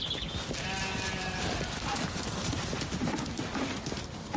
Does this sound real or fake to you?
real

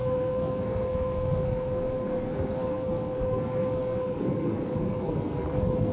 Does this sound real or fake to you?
fake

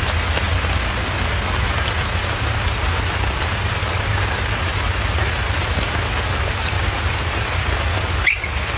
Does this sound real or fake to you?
real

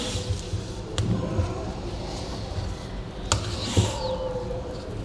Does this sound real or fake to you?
real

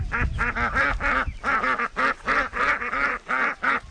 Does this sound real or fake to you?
real